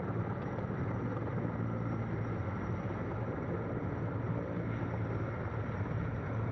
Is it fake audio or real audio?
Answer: real